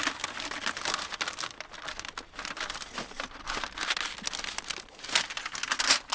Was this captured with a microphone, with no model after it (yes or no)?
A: yes